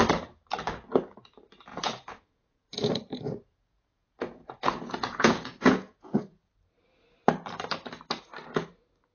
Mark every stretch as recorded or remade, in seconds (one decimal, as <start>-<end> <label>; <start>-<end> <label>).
0.0-1.7 recorded; 1.7-6.5 remade; 6.5-9.1 recorded